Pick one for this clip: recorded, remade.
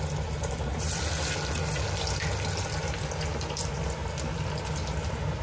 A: recorded